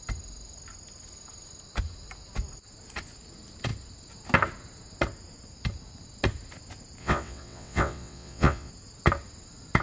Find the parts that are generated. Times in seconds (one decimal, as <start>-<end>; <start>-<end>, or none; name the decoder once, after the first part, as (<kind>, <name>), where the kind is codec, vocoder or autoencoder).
7.0-8.7 (vocoder, WaveNeXt)